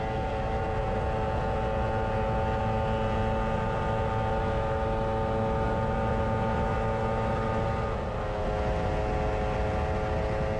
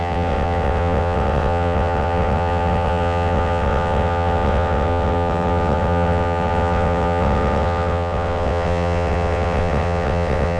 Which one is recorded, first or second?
first